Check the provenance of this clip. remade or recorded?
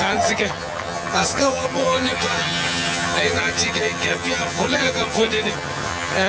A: remade